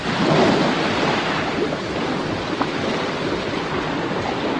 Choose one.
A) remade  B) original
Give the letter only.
A